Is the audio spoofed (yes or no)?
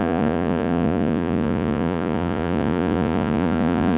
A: yes